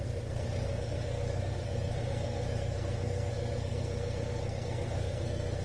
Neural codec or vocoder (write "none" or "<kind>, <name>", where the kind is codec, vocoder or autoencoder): codec, SNAC